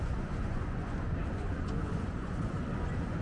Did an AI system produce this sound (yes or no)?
yes